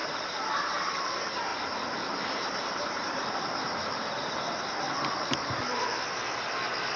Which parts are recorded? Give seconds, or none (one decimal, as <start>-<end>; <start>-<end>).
1.0-1.5; 3.3-7.0